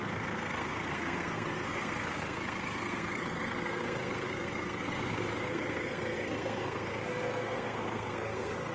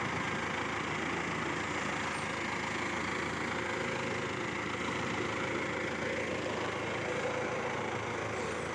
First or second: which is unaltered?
second